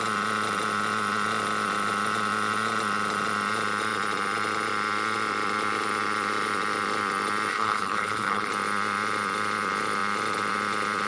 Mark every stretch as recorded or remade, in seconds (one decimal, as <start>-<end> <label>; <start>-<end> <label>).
0.0-7.5 recorded; 7.5-8.5 remade; 8.5-11.1 recorded